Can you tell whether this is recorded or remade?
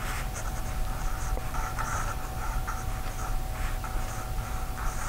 recorded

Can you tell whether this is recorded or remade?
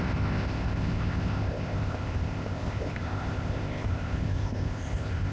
remade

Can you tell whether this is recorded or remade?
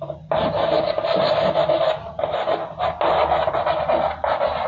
recorded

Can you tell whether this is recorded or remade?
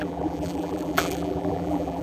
remade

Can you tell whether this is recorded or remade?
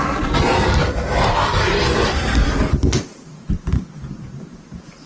remade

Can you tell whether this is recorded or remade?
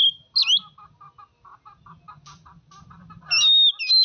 recorded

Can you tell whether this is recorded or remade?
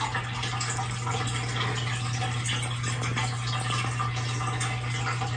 recorded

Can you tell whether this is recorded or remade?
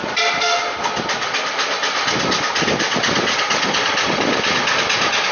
recorded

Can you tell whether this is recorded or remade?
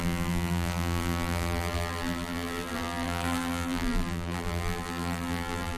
remade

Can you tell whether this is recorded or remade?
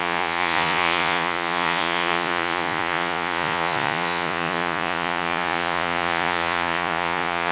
remade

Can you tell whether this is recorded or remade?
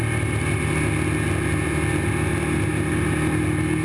recorded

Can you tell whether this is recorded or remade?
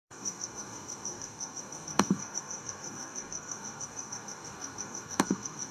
remade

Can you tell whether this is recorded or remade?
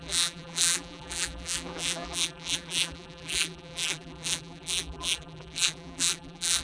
remade